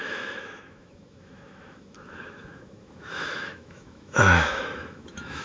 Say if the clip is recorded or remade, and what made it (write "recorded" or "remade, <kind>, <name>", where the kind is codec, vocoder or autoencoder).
remade, autoencoder, DAC-VAE